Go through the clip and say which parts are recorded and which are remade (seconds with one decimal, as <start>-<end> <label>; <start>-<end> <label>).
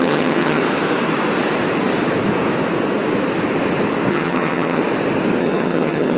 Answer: 0.0-0.6 remade; 0.6-4.1 recorded; 4.1-4.8 remade; 4.8-5.4 recorded; 5.4-6.2 remade